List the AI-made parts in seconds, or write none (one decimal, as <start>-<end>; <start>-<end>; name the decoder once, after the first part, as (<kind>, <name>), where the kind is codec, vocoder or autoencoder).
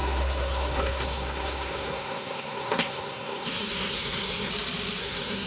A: 0.0-4.5 (codec, SNAC); 5.0-5.5